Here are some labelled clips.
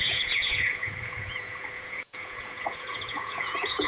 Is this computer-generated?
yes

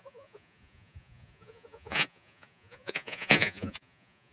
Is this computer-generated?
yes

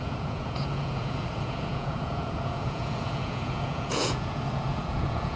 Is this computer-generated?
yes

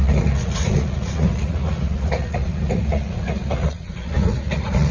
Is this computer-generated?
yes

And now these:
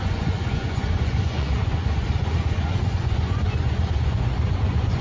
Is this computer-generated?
yes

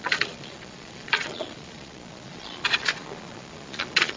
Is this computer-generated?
yes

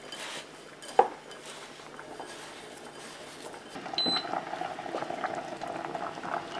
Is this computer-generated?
no